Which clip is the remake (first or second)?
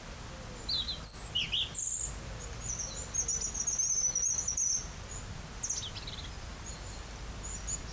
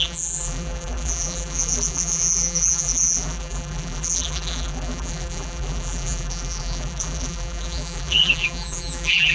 second